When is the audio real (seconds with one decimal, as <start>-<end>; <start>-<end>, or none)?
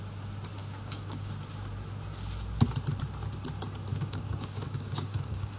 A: 0.0-0.6; 1.3-3.9